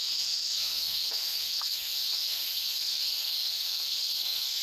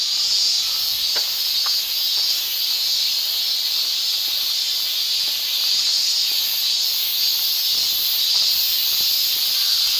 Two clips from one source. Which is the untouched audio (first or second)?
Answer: second